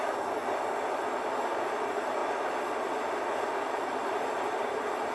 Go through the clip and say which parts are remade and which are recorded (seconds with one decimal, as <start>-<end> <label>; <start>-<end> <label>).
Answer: 0.0-0.4 remade; 0.4-1.5 recorded; 1.5-2.2 remade; 2.2-2.9 recorded; 2.9-5.1 remade